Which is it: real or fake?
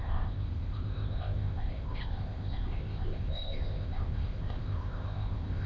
fake